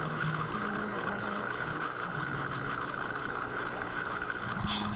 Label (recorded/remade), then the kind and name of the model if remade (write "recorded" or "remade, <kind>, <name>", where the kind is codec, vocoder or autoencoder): remade, codec, HILCodec